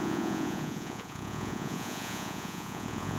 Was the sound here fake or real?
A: fake